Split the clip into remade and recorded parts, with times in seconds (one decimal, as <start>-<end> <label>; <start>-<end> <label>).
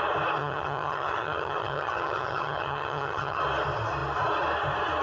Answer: 0.0-0.4 recorded; 0.4-3.4 remade; 3.4-5.0 recorded